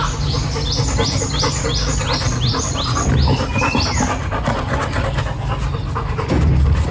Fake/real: real